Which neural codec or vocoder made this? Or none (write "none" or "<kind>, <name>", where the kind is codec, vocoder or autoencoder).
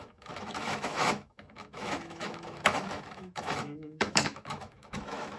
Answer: autoencoder, DAC-VAE